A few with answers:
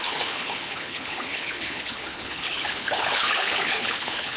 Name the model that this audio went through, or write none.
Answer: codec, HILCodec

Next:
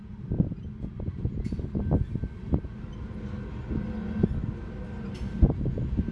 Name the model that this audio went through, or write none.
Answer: none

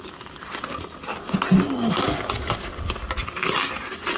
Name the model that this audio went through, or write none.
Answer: none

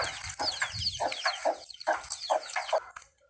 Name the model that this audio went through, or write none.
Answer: none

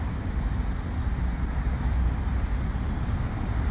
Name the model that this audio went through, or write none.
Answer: none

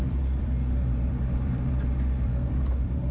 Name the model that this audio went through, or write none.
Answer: vocoder, BigVGAN v2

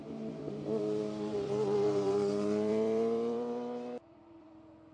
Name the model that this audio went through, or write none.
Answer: vocoder, BigVGAN v2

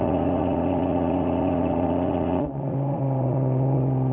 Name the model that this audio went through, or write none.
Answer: vocoder, Vocos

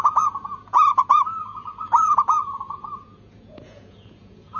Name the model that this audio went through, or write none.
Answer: vocoder, Vocos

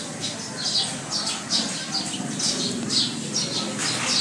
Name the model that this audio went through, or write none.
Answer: none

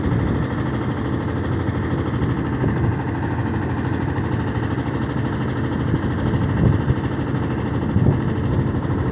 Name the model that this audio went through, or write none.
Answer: none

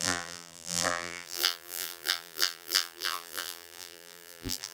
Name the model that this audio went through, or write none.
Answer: vocoder, BigVGAN v2